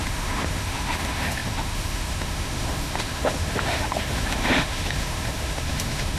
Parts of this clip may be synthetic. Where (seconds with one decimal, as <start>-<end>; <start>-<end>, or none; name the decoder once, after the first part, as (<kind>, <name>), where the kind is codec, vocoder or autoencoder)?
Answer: 0.0-6.2 (autoencoder, DAC-VAE)